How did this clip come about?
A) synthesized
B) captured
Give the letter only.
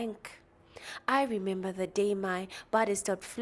B